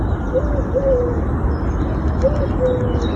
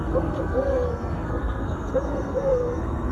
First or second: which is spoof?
second